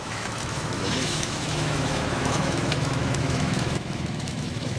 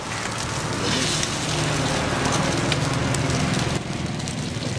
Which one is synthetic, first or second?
first